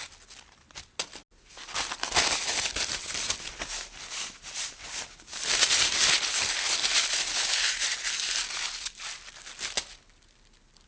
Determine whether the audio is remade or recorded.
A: recorded